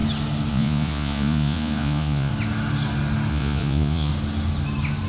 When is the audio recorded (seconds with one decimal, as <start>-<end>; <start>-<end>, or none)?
0.0-0.5; 2.3-3.3; 4.1-5.1